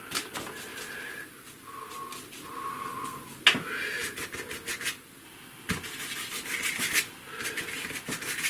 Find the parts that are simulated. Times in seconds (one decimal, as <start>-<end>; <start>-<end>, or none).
none